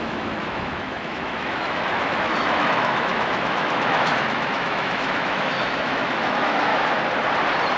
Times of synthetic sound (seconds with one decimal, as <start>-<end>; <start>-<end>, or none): 0.0-6.7

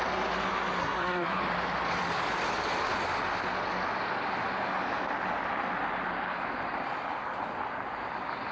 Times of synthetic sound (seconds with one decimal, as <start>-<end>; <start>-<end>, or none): 0.8-1.4

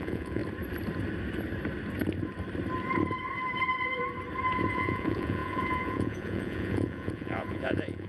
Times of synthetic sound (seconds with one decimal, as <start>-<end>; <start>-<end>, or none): 0.0-0.4; 4.7-8.1

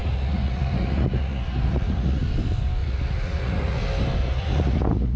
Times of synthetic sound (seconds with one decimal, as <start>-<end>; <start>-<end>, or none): 0.0-2.2; 2.8-3.8; 4.2-5.2